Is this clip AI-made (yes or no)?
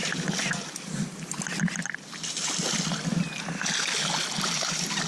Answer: no